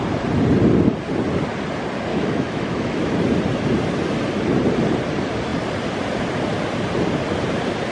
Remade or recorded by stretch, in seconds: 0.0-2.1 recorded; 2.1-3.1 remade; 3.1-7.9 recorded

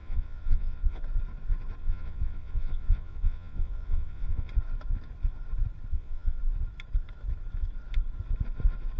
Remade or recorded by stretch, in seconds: 0.0-1.0 remade; 1.0-1.8 recorded; 1.8-4.5 remade; 4.5-5.9 recorded; 5.9-6.4 remade; 6.4-9.0 recorded

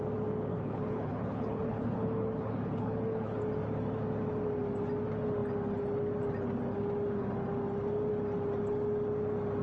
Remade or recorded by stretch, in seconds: 0.0-0.5 recorded; 0.5-3.4 remade; 3.4-9.6 recorded

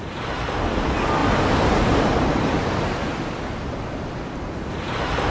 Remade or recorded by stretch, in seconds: 0.0-1.2 recorded; 1.2-2.9 remade; 2.9-5.3 recorded